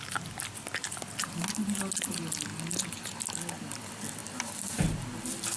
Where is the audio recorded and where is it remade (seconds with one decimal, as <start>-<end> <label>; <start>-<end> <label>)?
0.0-5.6 recorded